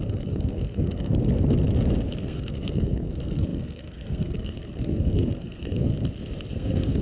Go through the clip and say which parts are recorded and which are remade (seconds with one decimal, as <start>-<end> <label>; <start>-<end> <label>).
0.0-1.1 remade; 1.1-2.2 recorded; 2.2-5.9 remade; 5.9-6.5 recorded; 6.5-7.0 remade

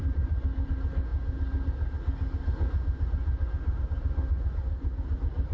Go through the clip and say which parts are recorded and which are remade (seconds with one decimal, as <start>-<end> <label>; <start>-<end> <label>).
0.0-0.7 remade; 0.7-5.5 recorded

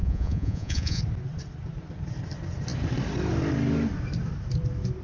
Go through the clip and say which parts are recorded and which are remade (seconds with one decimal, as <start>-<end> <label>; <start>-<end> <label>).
0.0-1.0 remade; 1.0-5.0 recorded

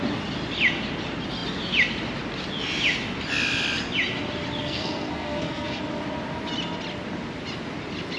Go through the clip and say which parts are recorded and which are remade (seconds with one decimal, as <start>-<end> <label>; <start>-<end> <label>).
0.0-4.6 recorded; 4.6-5.8 remade; 5.8-8.2 recorded

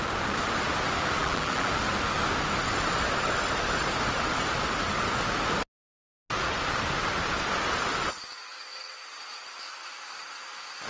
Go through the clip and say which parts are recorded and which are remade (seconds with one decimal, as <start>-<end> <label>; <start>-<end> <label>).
0.0-1.2 recorded; 1.2-1.7 remade; 1.7-10.9 recorded

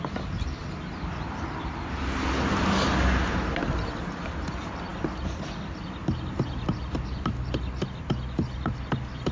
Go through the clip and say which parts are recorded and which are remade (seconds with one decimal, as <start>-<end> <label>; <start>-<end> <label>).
0.0-9.3 recorded